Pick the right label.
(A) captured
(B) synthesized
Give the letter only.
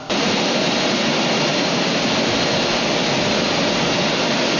A